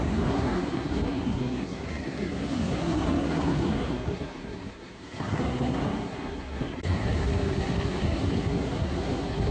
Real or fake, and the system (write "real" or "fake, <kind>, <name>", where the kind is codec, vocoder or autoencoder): fake, codec, SNAC